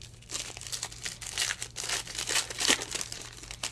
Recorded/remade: recorded